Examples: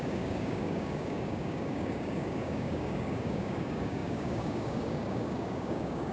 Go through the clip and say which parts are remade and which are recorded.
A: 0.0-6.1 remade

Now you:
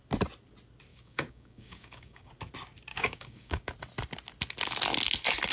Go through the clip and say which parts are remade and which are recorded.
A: 0.0-0.9 recorded; 0.9-2.3 remade; 2.3-2.9 recorded; 2.9-3.7 remade; 3.7-5.5 recorded

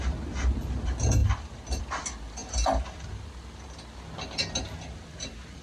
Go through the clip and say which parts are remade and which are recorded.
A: 0.0-5.6 recorded

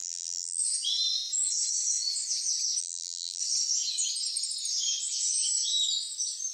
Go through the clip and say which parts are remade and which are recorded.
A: 0.0-0.6 remade; 0.6-2.8 recorded; 2.8-3.4 remade; 3.4-6.5 recorded

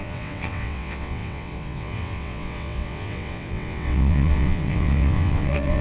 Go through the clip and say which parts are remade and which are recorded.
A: 0.0-5.8 remade

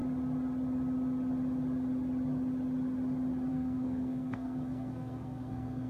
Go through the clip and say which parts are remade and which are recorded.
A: 0.0-3.5 recorded; 3.5-5.9 remade

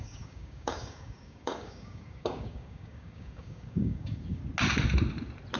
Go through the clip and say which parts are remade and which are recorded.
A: 0.0-4.4 remade; 4.4-5.6 recorded

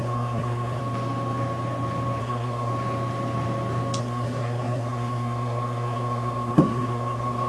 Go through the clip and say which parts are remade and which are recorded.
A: 0.0-0.8 remade; 0.8-2.2 recorded; 2.2-2.7 remade; 2.7-4.0 recorded; 4.0-7.5 remade